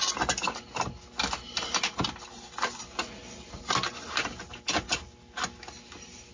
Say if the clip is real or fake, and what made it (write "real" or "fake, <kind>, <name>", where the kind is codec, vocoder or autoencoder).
real